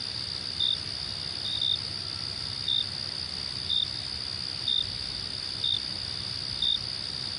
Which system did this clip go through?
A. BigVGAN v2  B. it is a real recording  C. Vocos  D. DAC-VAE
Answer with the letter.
B